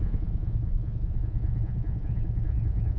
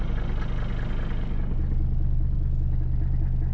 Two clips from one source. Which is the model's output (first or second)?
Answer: first